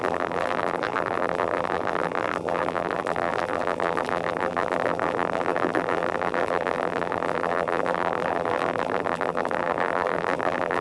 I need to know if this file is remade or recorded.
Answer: remade